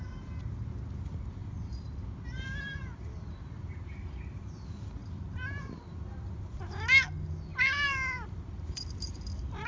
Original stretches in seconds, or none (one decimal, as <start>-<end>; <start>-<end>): 0.0-1.4; 3.8-5.0; 6.4-7.5